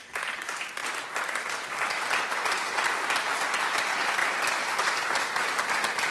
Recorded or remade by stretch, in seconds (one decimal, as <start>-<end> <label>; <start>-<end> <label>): 0.0-6.1 recorded